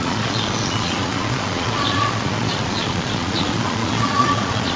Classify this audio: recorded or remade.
remade